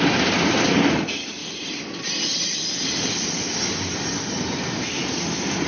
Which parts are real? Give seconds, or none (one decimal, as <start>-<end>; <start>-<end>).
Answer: 0.0-1.4; 4.8-5.7